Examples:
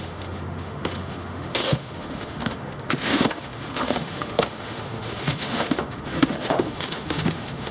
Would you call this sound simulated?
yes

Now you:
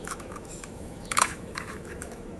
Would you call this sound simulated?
yes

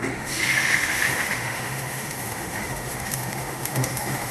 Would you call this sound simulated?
yes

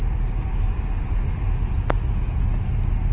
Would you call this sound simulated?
no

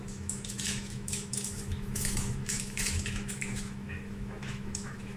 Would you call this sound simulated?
yes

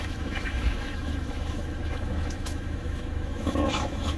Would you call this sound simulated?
yes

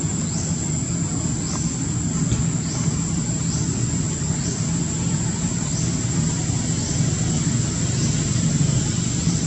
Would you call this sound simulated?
no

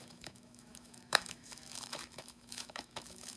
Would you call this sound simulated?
yes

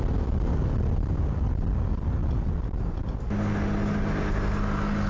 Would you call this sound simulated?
no